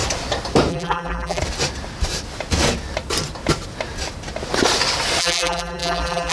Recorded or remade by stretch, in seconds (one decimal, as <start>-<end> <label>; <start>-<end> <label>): 0.0-0.7 recorded; 0.7-1.4 remade; 1.4-5.2 recorded; 5.2-6.3 remade